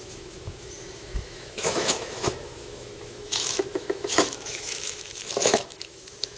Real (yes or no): no